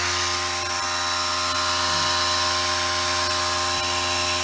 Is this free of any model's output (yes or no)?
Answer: yes